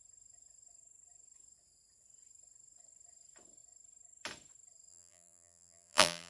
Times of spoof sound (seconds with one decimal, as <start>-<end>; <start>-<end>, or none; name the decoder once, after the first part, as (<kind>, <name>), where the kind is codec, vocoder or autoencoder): 4.9-6.3 (vocoder, BigVGAN v2)